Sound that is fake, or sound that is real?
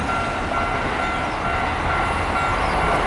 real